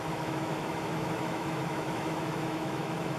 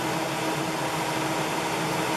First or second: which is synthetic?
first